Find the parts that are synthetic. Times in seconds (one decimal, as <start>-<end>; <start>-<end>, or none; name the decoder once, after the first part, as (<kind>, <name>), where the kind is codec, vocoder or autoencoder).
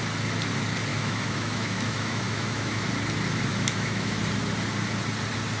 0.9-2.9 (autoencoder, DAC-VAE); 3.5-4.2